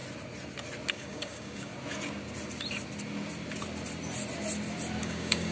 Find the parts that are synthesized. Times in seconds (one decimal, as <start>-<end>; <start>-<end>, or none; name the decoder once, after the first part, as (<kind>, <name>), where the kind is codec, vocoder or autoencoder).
0.9-1.7 (codec, DAC); 5.0-5.5